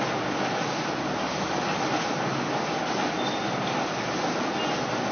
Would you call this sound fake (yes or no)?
no